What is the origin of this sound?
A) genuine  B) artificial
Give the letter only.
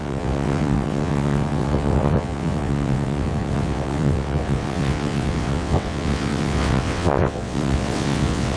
B